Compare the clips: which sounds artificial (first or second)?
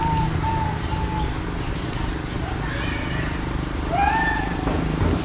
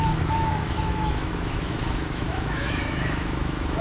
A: second